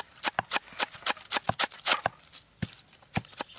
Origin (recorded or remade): recorded